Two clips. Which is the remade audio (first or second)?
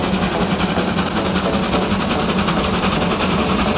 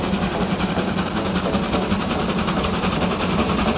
second